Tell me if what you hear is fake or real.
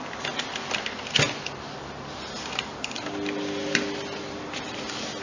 real